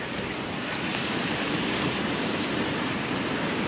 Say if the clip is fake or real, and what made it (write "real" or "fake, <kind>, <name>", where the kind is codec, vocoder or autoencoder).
real